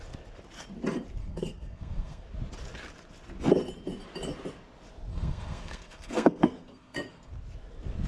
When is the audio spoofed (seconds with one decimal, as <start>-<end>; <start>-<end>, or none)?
1.2-2.2; 5.1-7.3